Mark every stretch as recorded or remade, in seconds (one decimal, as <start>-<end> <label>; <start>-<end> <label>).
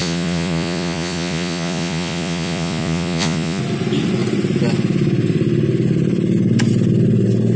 0.0-3.6 remade; 3.6-7.6 recorded